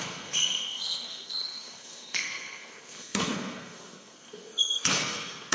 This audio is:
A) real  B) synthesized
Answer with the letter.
B